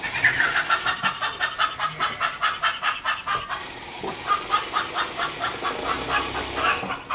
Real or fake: real